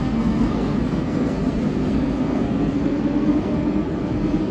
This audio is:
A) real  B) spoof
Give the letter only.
B